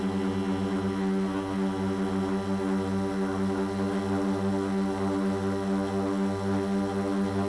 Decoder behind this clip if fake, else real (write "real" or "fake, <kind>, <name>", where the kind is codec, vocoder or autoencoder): real